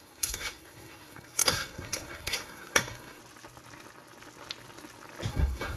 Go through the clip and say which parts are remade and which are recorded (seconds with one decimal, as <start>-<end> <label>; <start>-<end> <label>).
0.0-3.2 remade; 3.2-5.3 recorded; 5.3-5.8 remade